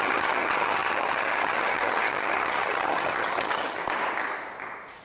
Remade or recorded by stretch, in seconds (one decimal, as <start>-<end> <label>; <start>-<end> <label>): 0.0-3.8 remade; 3.8-5.0 recorded